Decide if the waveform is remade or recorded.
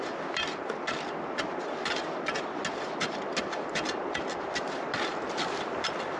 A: recorded